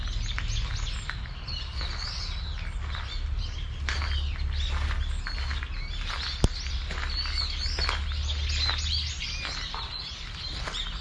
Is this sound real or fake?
real